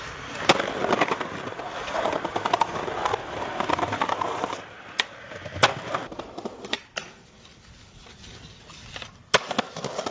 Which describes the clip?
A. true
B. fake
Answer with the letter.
B